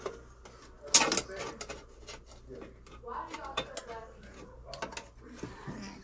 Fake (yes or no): no